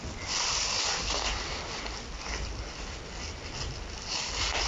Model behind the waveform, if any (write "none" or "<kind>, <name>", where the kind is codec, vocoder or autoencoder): none